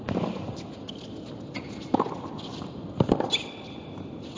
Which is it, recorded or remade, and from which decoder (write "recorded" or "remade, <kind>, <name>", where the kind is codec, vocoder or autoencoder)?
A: recorded